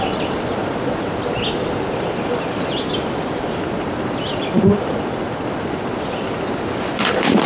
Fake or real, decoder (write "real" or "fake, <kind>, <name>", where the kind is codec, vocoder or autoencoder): real